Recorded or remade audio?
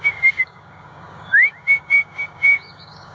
remade